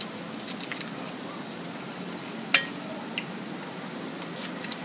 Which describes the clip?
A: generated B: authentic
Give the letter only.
B